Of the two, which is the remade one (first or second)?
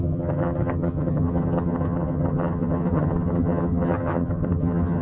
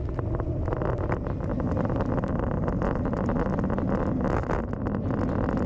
first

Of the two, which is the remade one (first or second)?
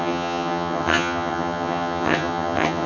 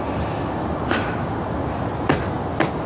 first